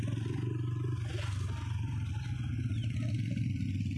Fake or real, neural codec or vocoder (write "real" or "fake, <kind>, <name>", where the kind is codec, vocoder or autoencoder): real